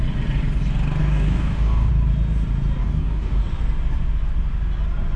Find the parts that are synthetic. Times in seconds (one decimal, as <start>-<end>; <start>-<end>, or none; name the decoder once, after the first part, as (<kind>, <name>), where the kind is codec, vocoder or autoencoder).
1.0-1.9 (codec, DAC); 2.8-3.4

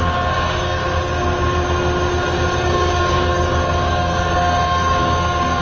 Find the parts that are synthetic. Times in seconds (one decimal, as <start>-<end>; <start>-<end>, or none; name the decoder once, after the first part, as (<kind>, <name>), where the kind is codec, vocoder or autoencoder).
0.0-0.8 (codec, DAC); 2.6-5.6

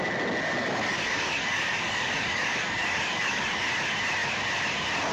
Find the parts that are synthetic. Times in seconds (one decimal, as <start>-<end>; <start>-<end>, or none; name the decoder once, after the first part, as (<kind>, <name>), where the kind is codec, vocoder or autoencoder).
0.6-3.7 (codec, DAC)

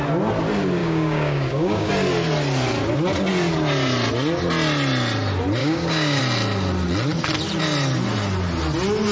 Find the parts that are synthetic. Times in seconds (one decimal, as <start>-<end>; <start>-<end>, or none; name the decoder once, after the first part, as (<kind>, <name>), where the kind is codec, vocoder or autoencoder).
0.8-1.9 (codec, DAC); 5.6-6.2

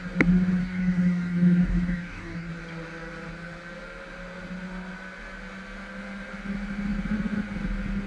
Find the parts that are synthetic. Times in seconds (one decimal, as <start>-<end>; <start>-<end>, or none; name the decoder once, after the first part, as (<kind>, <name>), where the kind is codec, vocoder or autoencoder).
0.6-2.5 (codec, DAC)

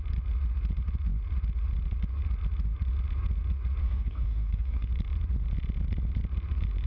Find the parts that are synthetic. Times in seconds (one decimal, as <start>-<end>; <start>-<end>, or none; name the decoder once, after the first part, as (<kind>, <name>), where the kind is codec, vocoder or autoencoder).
3.8-4.9 (codec, DAC)